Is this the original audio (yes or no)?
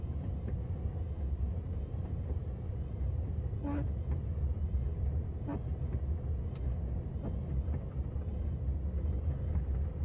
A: yes